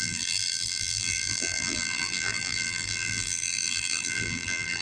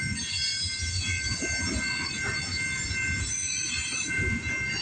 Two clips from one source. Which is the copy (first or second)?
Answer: first